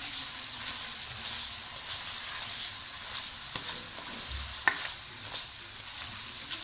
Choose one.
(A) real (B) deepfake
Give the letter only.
A